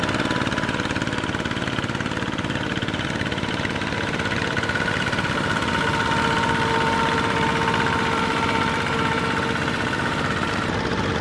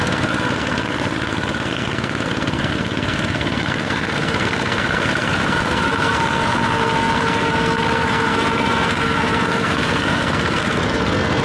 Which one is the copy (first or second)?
second